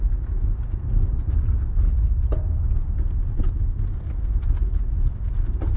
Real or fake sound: real